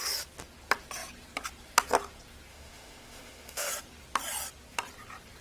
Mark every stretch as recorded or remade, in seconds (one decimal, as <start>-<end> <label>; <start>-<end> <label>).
0.0-2.5 recorded; 2.5-3.7 remade; 3.7-5.4 recorded